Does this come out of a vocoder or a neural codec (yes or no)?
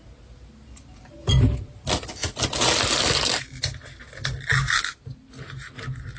no